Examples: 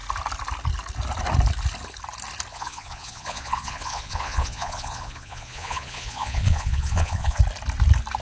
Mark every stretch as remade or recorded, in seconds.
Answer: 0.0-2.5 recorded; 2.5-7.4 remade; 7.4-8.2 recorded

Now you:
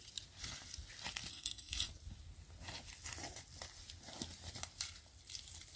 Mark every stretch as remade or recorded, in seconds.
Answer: 0.0-1.3 recorded; 1.3-1.9 remade; 1.9-5.8 recorded

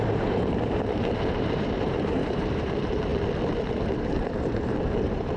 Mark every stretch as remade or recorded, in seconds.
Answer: 0.0-3.1 remade; 3.1-3.7 recorded; 3.7-5.4 remade

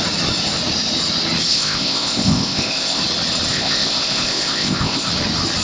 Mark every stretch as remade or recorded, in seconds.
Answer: 0.0-1.5 recorded; 1.5-3.0 remade; 3.0-3.5 recorded; 3.5-5.1 remade; 5.1-5.6 recorded

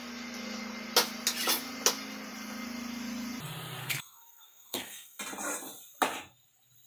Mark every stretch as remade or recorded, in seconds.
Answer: 0.0-3.8 recorded; 3.8-5.2 remade; 5.2-6.9 recorded